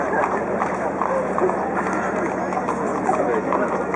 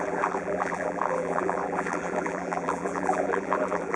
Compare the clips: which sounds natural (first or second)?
first